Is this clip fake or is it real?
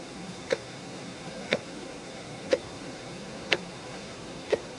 fake